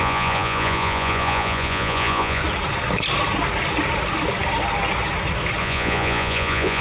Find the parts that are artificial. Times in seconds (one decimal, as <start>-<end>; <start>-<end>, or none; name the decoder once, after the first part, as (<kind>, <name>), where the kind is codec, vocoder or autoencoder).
0.0-2.4 (vocoder, Vocos); 5.6-6.8